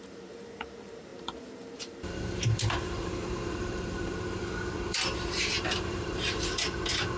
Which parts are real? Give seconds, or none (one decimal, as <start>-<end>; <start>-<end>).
none